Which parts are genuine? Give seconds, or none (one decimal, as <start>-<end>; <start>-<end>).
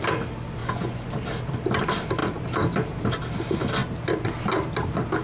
0.0-0.6; 1.1-5.2